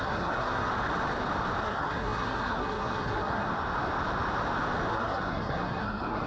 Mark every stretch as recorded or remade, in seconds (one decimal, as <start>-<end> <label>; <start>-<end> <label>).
0.0-0.7 remade; 0.7-1.6 recorded; 1.6-3.5 remade; 3.5-4.9 recorded; 4.9-6.3 remade